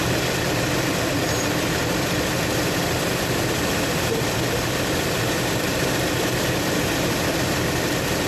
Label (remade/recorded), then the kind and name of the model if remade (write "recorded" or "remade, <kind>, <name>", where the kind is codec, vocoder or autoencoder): remade, vocoder, BigVGAN v2